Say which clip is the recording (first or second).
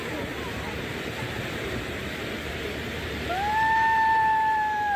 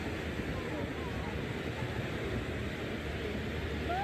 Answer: second